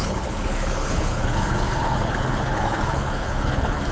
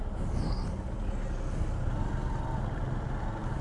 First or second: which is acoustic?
second